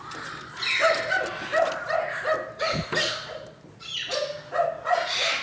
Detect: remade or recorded recorded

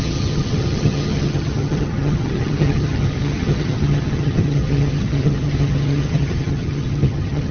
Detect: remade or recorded remade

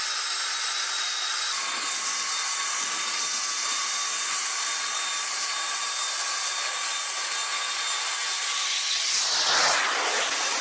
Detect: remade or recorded recorded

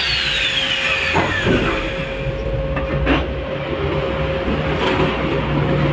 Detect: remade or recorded recorded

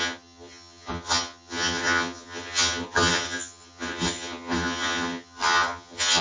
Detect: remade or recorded remade